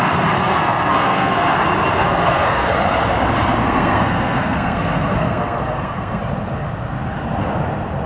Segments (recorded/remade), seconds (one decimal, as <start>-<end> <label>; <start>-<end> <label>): 0.0-0.4 recorded; 0.4-1.5 remade; 1.5-2.0 recorded; 2.0-2.7 remade; 2.7-3.6 recorded; 3.6-6.2 remade; 6.2-8.1 recorded